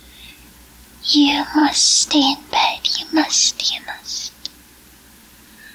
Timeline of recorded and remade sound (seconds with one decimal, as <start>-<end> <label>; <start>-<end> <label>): 0.0-5.7 recorded